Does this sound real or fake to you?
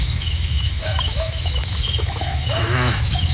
fake